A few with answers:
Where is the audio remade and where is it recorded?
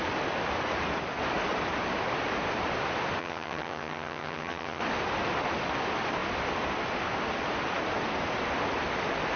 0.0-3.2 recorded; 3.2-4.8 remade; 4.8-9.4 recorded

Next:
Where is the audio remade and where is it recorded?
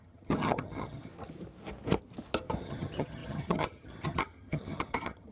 0.0-1.1 remade; 1.1-2.6 recorded; 2.6-5.3 remade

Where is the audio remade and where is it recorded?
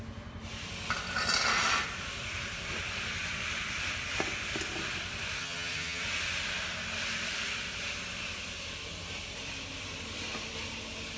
0.0-5.4 recorded; 5.4-6.0 remade; 6.0-11.2 recorded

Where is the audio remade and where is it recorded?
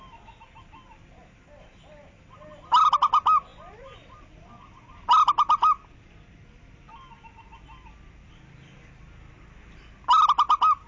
0.0-10.9 recorded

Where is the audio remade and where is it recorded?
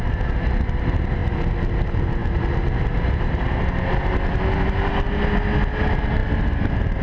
0.0-7.0 recorded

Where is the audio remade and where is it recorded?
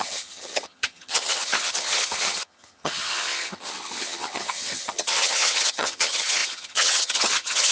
0.0-7.7 remade